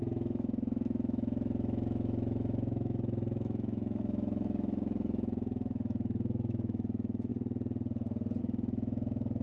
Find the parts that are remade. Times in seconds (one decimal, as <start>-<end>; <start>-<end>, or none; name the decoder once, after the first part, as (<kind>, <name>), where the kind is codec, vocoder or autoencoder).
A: 0.0-7.3 (autoencoder, DAC-VAE); 8.4-9.4

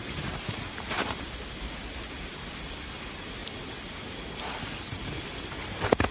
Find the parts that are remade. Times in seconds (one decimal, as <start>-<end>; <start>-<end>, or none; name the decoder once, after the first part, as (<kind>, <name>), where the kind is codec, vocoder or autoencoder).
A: none

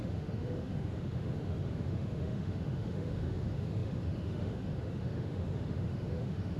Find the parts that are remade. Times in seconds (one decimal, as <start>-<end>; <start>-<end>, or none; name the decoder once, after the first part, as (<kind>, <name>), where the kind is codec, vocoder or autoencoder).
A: 0.0-6.6 (autoencoder, DAC-VAE)

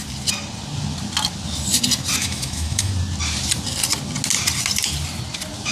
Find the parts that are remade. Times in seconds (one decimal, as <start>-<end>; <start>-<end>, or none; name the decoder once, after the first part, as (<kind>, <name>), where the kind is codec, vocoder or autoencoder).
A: 2.2-2.9 (autoencoder, DAC-VAE)

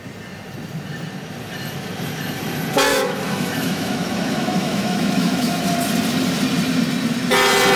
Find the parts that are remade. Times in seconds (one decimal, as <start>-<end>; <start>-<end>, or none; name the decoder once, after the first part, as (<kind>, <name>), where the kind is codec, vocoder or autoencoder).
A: 2.9-5.6 (autoencoder, DAC-VAE)

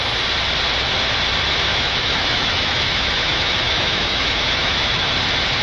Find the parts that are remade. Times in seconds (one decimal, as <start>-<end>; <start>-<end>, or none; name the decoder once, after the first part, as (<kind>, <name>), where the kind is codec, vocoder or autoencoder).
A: 1.7-5.1 (autoencoder, DAC-VAE)

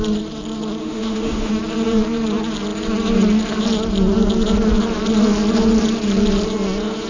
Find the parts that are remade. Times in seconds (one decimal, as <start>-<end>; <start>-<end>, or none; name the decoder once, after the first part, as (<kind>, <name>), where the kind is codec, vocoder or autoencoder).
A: 0.8-1.5 (autoencoder, DAC-VAE)